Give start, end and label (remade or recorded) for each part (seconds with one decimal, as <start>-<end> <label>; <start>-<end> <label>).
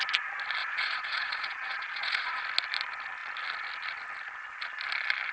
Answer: 0.0-0.6 recorded; 0.6-2.4 remade; 2.4-5.3 recorded